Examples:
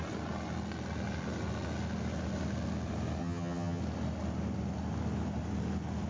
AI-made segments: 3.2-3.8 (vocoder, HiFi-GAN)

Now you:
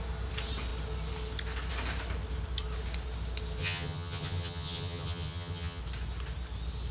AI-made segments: 3.6-5.8 (vocoder, HiFi-GAN)

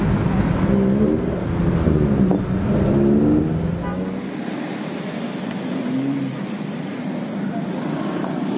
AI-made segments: none

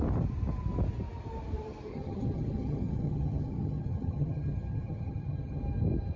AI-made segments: 1.9-5.6 (vocoder, HiFi-GAN)

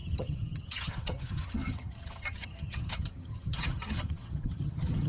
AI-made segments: 0.0-5.1 (vocoder, HiFi-GAN)

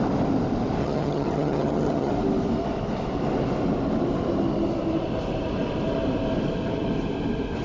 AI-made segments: 0.8-2.1 (vocoder, HiFi-GAN)

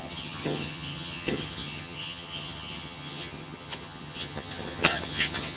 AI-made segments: 0.0-5.6 (vocoder, HiFi-GAN)

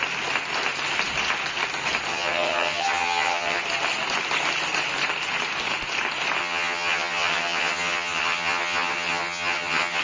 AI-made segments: 2.1-3.6 (vocoder, HiFi-GAN); 6.4-10.0